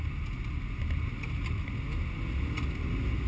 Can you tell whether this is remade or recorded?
recorded